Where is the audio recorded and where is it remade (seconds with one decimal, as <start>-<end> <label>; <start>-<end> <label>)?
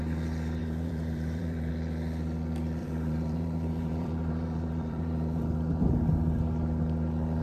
0.0-0.6 recorded; 0.6-1.7 remade; 1.7-2.8 recorded; 2.8-5.4 remade; 5.4-7.4 recorded